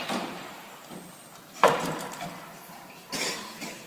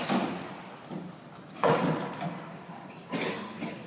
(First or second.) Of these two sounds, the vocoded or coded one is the first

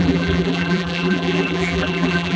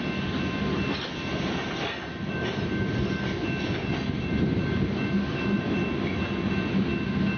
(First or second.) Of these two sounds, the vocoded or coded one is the first